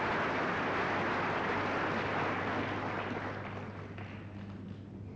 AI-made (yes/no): no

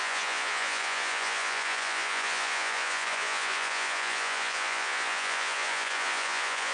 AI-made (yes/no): yes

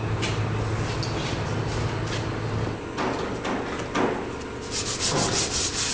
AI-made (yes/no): no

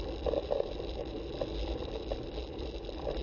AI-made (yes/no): no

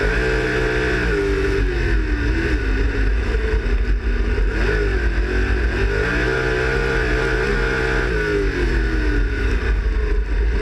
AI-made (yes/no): no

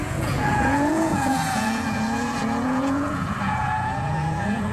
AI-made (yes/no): yes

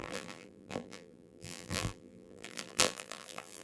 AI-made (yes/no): yes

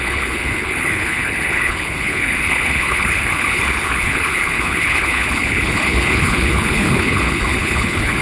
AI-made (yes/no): yes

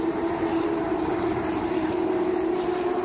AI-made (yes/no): yes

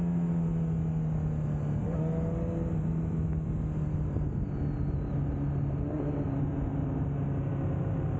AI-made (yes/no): no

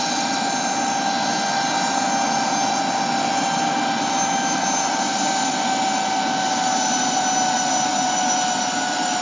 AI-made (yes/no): no